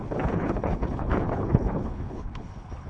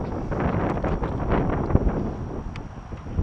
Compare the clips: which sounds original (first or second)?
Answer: second